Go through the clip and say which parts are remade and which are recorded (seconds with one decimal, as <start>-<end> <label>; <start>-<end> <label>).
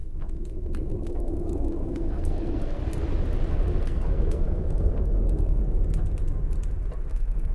0.0-2.8 remade; 2.8-3.5 recorded; 3.5-5.6 remade; 5.6-7.1 recorded; 7.1-7.5 remade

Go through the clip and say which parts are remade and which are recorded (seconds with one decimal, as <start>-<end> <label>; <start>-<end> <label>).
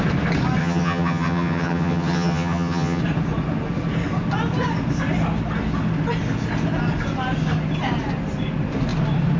0.0-0.6 recorded; 0.6-3.0 remade; 3.0-9.4 recorded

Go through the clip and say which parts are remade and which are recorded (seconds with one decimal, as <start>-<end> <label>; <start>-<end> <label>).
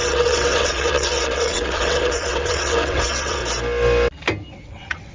0.0-3.4 remade; 3.4-4.5 recorded; 4.5-5.1 remade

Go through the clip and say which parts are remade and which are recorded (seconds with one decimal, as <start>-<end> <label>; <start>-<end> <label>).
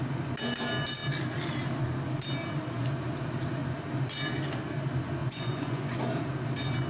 0.0-5.2 recorded; 5.2-6.0 remade; 6.0-6.9 recorded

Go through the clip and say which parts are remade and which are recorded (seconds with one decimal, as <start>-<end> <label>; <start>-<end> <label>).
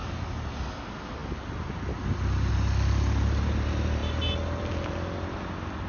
0.0-5.9 recorded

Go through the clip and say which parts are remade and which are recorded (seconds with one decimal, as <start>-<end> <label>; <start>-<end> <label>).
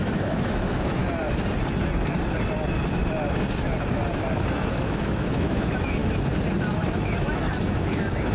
0.0-1.0 remade; 1.0-4.7 recorded; 4.7-6.0 remade; 6.0-6.7 recorded; 6.7-8.3 remade